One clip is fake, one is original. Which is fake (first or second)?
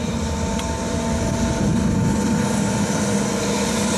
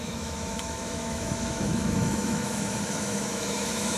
second